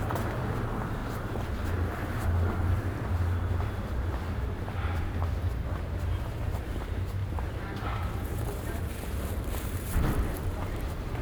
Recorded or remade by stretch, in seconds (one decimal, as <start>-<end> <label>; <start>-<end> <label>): 0.0-1.0 remade; 1.0-5.8 recorded; 5.8-11.2 remade